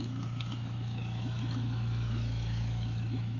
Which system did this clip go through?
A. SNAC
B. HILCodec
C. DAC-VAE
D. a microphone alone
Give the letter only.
C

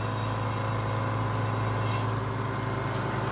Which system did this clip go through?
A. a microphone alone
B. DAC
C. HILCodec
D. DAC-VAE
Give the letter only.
A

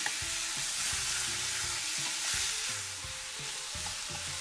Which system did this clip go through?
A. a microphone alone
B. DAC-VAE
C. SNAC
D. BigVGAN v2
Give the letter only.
A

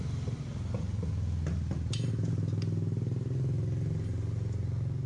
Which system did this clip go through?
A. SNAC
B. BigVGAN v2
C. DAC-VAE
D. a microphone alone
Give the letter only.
D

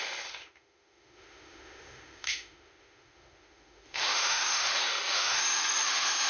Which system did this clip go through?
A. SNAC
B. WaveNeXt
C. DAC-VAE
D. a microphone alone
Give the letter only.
C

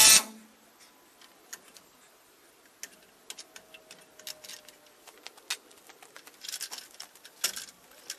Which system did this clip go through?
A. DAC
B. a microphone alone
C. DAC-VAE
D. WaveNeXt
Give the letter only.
B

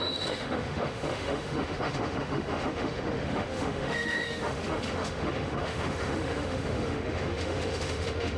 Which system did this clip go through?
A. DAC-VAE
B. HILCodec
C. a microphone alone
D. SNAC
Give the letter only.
A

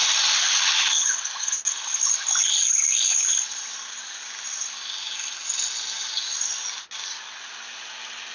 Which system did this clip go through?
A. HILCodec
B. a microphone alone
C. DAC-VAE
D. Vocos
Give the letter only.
B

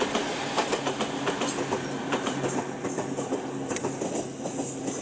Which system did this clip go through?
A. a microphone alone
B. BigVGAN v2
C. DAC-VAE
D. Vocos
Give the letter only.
A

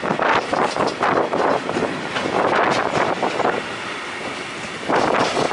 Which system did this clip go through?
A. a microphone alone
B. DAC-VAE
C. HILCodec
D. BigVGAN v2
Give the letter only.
A